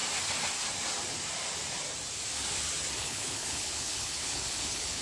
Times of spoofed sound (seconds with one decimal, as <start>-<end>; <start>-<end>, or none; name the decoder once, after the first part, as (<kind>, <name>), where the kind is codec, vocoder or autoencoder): 3.0-5.0 (codec, HILCodec)